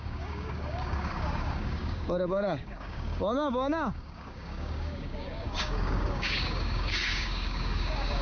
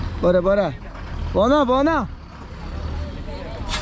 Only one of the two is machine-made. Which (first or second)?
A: first